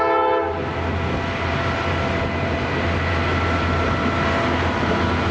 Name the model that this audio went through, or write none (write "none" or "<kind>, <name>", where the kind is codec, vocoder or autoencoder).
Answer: none